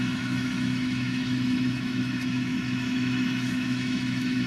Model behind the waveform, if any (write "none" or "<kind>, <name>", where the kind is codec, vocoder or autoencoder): autoencoder, DAC-VAE